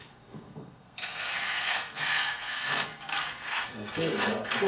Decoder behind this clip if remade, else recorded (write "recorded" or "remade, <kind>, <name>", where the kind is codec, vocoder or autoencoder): remade, codec, SNAC